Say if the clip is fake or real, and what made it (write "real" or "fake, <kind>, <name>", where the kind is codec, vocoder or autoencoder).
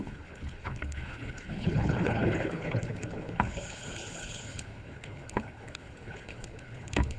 fake, codec, HILCodec